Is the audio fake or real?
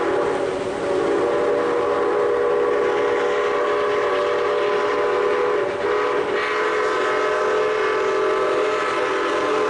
real